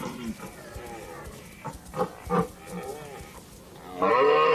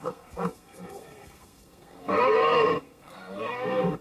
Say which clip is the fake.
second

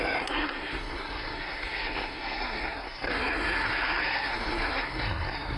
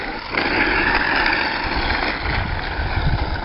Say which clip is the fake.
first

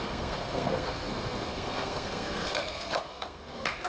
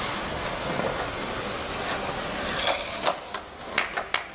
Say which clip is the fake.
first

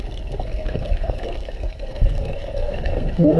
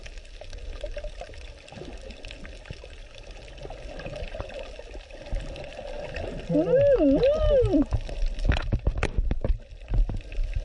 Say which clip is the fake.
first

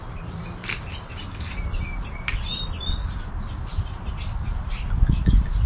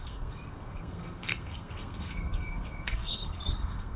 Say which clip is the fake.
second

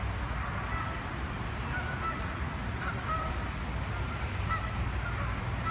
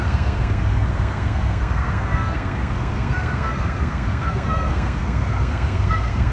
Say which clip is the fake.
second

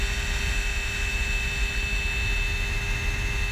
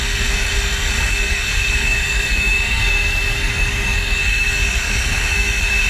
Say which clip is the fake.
second